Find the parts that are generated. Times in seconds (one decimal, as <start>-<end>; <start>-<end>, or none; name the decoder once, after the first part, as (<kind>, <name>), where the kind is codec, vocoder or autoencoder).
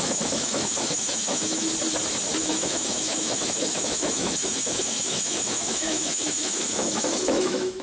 0.0-1.7 (autoencoder, DAC-VAE); 2.4-7.8